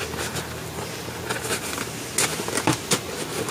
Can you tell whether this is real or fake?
real